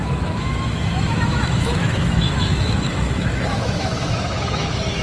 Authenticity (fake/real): fake